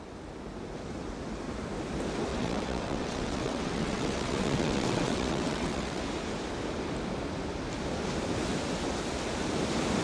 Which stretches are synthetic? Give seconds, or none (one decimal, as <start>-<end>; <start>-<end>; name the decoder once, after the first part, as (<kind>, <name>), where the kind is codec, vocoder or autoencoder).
2.3-6.0 (vocoder, WaveNeXt)